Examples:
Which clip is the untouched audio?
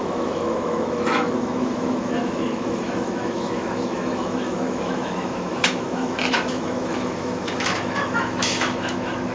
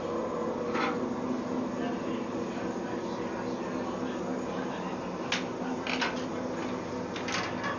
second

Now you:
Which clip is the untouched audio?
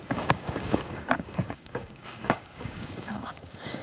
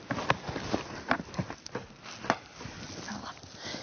second